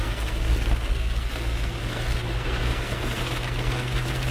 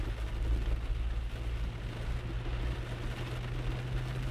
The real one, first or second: second